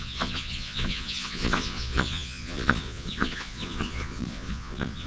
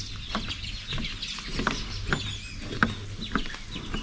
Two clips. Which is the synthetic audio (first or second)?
first